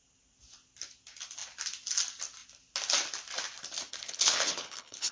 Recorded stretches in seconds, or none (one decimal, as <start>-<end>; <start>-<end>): 0.0-3.9